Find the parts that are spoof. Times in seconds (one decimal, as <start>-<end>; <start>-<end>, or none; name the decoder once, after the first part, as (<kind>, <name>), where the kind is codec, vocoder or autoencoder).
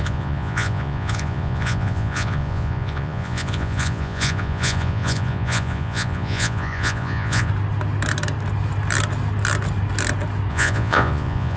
0.0-7.5 (vocoder, Vocos); 10.5-11.6